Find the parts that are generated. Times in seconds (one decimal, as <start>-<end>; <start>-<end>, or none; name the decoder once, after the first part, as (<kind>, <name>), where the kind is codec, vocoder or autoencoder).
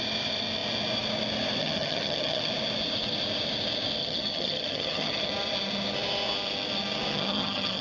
1.6-2.5 (vocoder, HiFi-GAN); 4.0-5.3; 7.1-7.8